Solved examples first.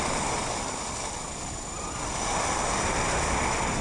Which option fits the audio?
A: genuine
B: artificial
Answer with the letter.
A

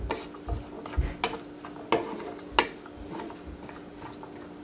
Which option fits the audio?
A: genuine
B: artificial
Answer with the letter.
A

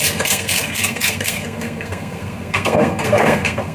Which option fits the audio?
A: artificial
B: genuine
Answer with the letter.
A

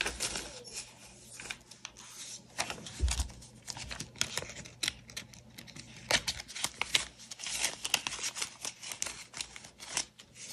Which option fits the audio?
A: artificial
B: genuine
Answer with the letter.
B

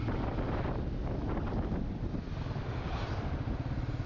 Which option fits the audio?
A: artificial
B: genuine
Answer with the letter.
B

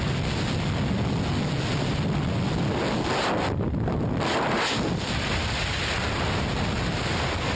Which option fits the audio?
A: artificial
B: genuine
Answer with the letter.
B